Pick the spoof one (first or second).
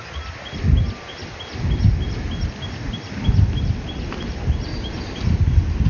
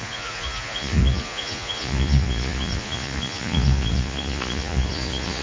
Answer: second